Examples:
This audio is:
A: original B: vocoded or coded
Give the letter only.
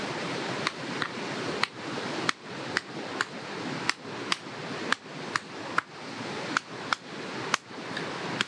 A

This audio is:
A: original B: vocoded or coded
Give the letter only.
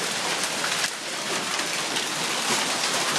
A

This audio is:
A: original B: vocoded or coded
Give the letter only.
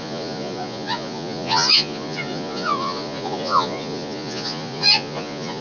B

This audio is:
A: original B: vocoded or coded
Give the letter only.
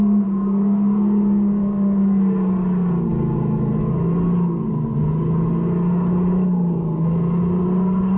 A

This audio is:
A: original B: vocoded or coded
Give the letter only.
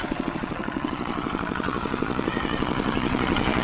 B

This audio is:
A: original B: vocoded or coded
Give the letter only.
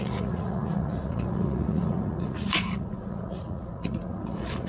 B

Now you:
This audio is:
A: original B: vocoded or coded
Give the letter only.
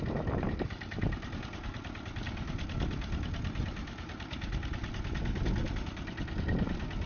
A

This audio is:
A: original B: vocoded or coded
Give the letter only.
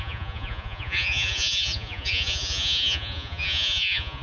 B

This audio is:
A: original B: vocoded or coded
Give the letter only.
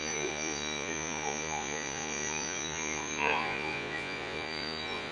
B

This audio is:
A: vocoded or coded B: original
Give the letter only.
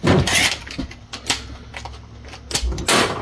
B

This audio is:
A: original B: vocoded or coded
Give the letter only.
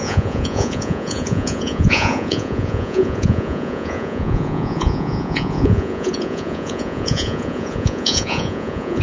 B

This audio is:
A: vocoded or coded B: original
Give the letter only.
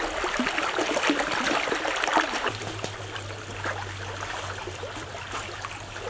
B